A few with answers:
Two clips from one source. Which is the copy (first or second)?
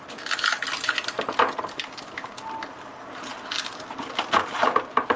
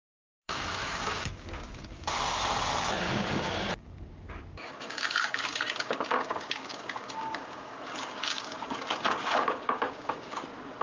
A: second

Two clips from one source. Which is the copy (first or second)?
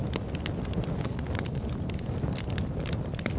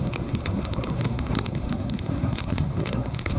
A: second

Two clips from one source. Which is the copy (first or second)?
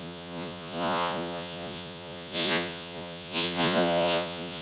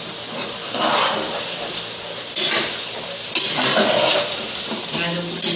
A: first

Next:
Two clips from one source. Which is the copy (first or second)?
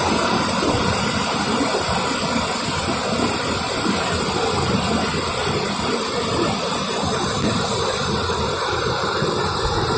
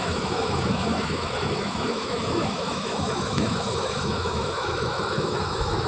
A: second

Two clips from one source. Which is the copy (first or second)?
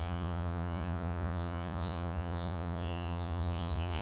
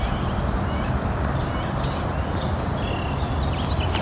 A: first